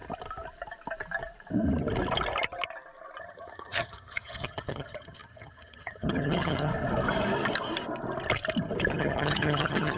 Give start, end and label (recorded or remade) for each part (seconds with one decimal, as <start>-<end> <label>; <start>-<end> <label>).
0.0-3.2 recorded; 3.2-6.7 remade; 6.7-8.9 recorded; 8.9-10.0 remade